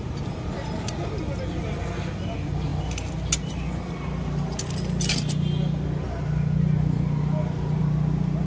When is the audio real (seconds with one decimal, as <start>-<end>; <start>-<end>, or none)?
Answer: 0.0-8.5